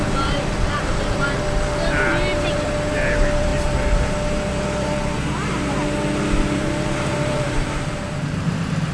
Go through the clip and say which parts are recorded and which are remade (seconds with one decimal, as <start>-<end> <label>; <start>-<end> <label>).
0.0-8.9 remade